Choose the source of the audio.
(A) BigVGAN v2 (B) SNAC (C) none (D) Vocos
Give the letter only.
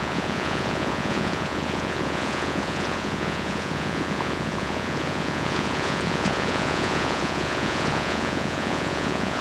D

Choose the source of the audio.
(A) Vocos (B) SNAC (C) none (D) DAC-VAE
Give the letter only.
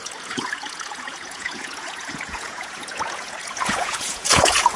A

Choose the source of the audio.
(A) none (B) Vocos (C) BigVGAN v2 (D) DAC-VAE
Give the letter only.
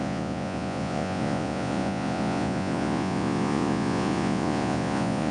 B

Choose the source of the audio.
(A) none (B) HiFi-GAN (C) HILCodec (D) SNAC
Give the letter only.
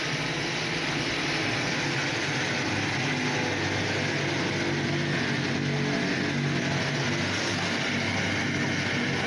A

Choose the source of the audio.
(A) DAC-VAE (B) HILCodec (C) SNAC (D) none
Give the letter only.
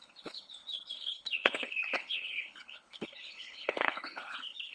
B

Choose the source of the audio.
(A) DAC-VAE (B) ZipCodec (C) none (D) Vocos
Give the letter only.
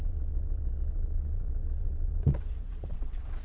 D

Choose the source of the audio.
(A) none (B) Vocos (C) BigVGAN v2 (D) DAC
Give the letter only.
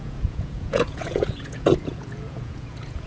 B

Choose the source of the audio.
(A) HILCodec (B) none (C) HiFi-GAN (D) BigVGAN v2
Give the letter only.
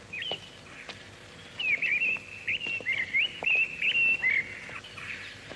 B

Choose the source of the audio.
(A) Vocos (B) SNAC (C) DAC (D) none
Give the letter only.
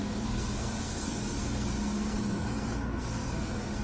B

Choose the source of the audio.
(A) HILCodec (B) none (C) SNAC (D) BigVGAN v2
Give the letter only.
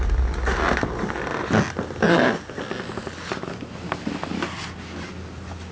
B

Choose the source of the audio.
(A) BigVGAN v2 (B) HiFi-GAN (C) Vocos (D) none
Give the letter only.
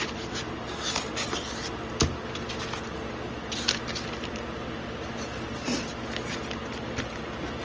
D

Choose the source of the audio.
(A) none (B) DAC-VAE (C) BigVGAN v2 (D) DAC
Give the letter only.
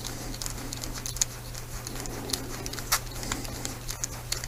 A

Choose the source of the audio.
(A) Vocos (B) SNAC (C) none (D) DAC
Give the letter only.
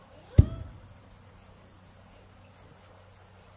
C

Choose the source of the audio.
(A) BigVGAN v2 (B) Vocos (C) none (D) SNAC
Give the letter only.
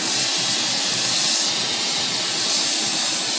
C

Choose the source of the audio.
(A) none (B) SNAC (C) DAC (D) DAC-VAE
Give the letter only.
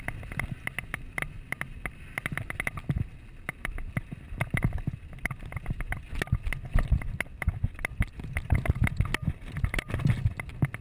A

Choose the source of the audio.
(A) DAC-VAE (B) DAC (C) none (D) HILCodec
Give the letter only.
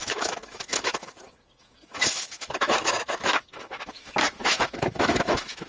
A